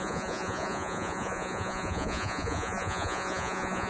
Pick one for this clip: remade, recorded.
remade